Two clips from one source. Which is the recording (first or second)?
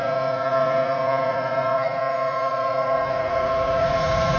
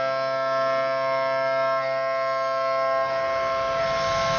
second